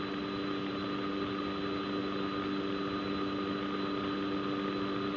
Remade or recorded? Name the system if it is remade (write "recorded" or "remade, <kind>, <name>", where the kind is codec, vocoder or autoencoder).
recorded